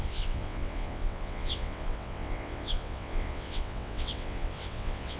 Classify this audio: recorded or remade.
remade